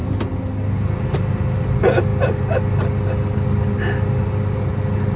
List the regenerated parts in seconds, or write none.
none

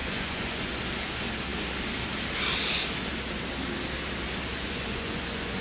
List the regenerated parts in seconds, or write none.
0.0-0.7 (vocoder, Vocos); 4.6-5.6

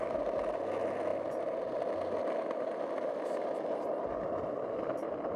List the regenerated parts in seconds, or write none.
none